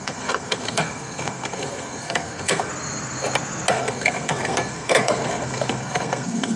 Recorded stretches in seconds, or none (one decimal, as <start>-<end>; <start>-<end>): 2.7-3.7